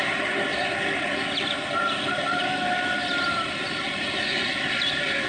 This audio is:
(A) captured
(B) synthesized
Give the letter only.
A